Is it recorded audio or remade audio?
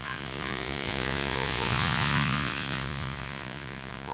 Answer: remade